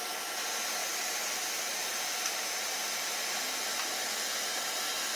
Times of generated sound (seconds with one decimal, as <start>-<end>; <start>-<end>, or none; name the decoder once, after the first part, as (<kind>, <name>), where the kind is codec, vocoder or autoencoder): 0.8-2.8 (vocoder, BigVGAN v2)

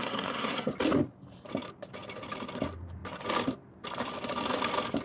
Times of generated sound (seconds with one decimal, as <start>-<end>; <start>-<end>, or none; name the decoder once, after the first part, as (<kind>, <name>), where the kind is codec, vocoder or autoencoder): 0.0-0.7 (codec, SNAC)

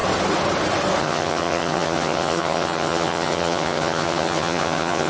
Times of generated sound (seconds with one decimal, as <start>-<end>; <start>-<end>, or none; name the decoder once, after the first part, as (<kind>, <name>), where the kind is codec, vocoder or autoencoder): 1.0-5.1 (vocoder, HiFi-GAN)

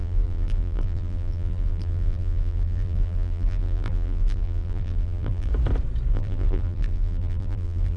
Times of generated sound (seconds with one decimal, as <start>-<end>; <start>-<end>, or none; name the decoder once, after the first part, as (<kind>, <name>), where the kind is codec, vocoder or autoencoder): 0.0-5.5 (vocoder, BigVGAN v2); 6.1-8.0

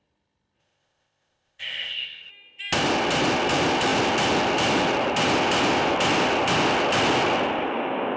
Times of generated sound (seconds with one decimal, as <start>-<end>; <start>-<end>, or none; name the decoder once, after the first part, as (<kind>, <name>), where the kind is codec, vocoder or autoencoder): 0.6-2.3 (codec, ZipCodec)

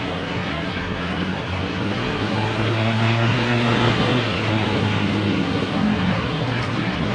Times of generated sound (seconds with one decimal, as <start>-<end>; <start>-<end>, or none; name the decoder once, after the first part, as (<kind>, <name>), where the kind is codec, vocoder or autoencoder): 0.0-7.1 (codec, SNAC)

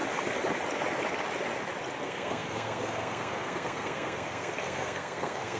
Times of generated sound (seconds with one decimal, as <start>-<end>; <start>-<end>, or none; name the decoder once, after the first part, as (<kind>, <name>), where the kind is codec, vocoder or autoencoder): 2.0-5.6 (codec, SNAC)